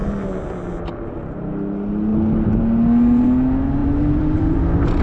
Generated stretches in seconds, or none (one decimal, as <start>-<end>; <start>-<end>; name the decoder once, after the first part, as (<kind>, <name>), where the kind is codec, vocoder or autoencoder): 3.8-4.6 (vocoder, BigVGAN v2)